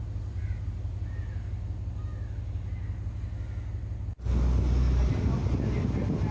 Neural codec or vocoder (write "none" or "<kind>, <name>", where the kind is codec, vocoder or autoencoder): none